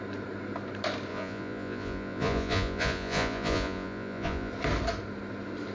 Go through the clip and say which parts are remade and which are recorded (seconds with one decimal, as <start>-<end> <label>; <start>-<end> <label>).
0.0-1.1 recorded; 1.1-4.5 remade; 4.5-5.7 recorded